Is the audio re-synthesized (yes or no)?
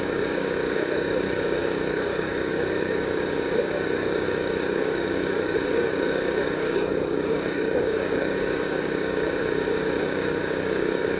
yes